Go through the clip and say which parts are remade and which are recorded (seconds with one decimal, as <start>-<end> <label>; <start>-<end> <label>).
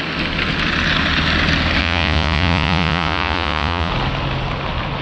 0.0-1.8 recorded; 1.8-3.9 remade; 3.9-5.0 recorded